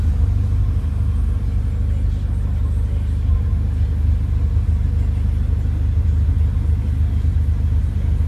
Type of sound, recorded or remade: recorded